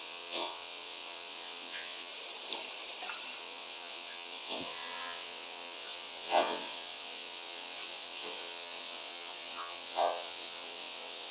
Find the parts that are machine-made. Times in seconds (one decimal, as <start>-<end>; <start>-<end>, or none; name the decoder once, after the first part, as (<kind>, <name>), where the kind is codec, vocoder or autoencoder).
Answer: 0.0-2.1 (vocoder, WaveNeXt); 3.4-11.3